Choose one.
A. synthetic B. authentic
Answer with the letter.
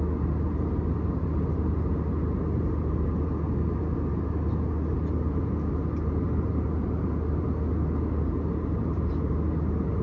B